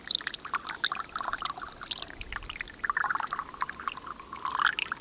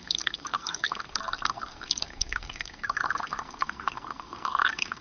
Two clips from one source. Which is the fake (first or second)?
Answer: second